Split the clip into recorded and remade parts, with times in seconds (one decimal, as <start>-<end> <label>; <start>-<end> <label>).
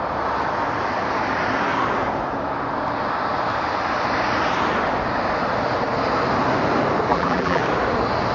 0.0-7.1 recorded; 7.1-7.6 remade; 7.6-8.3 recorded